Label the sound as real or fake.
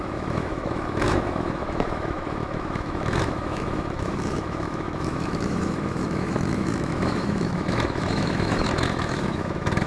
fake